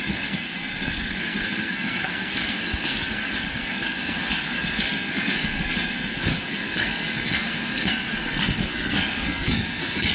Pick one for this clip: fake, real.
fake